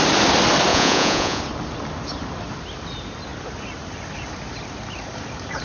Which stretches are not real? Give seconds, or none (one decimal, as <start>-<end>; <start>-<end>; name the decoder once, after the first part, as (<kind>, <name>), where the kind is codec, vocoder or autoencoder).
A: 0.7-1.4 (vocoder, Vocos)